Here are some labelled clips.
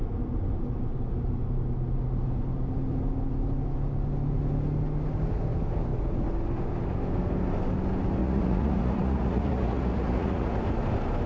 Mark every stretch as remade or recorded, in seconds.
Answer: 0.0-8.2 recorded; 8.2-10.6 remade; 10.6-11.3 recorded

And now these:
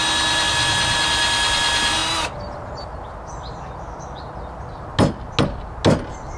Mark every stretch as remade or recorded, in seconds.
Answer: 0.0-6.4 recorded

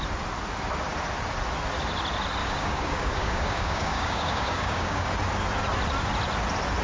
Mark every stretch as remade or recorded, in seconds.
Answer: 0.0-2.4 recorded; 2.4-5.1 remade; 5.1-6.8 recorded

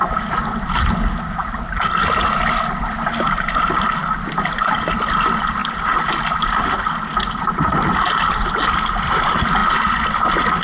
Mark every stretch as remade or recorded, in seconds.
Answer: 0.0-10.6 recorded